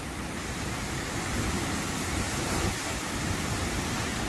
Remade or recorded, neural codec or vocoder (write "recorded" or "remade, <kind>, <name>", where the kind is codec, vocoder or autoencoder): recorded